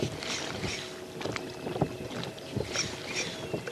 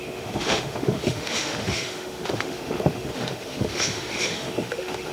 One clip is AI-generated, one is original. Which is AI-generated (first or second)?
second